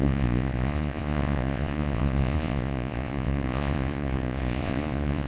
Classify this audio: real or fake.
fake